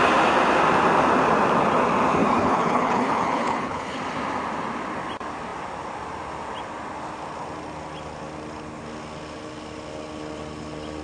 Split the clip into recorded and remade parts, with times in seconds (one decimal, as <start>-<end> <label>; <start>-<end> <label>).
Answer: 0.0-2.2 recorded; 2.2-4.0 remade; 4.0-11.0 recorded